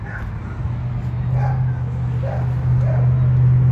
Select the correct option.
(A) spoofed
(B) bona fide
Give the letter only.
B